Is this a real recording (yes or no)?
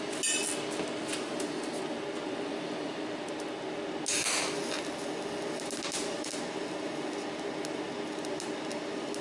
yes